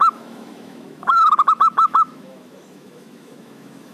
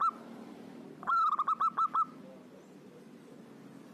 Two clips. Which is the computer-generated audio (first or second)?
first